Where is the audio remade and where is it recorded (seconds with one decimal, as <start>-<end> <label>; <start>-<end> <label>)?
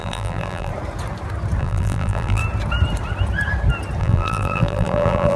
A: 0.0-0.7 remade; 0.7-1.6 recorded; 1.6-2.4 remade; 2.4-4.0 recorded; 4.0-5.4 remade